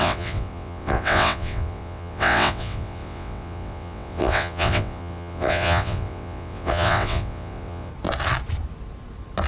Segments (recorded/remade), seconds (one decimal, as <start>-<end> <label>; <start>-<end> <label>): 0.0-7.9 remade; 7.9-9.5 recorded